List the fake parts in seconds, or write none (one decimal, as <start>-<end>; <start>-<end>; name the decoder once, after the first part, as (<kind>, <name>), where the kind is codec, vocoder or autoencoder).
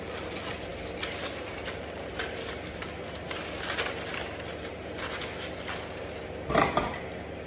none